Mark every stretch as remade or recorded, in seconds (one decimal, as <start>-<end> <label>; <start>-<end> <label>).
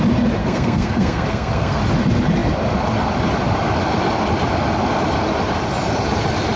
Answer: 0.0-0.4 recorded; 0.4-1.8 remade; 1.8-6.6 recorded